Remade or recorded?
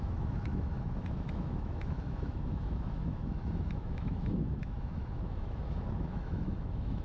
remade